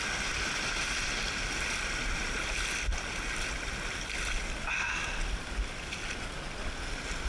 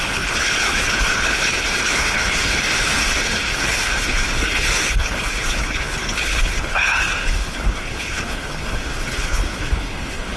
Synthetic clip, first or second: second